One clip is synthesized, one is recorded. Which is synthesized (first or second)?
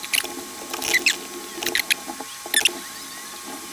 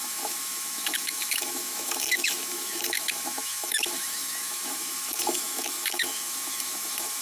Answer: second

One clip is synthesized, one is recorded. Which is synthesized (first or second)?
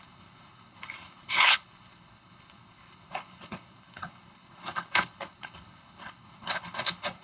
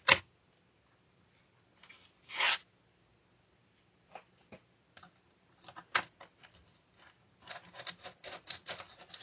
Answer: first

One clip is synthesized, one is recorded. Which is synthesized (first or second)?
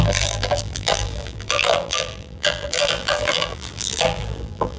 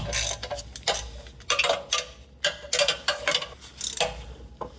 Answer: first